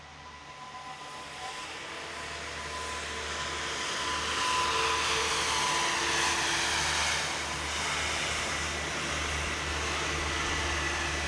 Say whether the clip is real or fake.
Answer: real